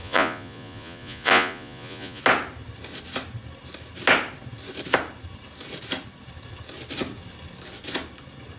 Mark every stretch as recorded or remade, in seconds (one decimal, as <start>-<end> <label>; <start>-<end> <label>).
0.0-2.2 remade; 2.2-8.6 recorded